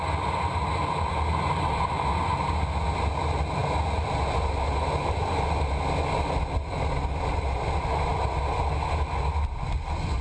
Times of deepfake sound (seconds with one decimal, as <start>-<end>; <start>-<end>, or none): none

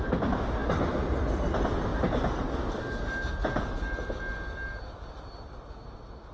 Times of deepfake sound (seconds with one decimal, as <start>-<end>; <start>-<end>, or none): none